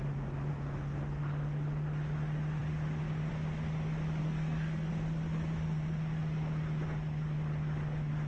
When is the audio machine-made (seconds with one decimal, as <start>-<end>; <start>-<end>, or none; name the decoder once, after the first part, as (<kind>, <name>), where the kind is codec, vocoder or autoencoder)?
4.2-4.9 (codec, SNAC)